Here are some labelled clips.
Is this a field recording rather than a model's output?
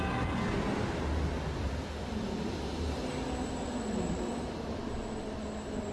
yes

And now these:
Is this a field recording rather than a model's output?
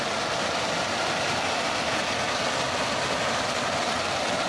yes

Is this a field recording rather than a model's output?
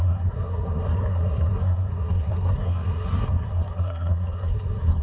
no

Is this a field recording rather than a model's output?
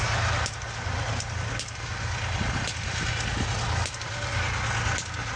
yes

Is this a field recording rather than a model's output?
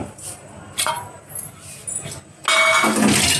yes